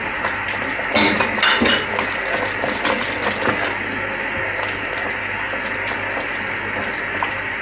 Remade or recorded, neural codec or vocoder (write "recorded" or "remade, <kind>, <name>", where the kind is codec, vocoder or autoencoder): recorded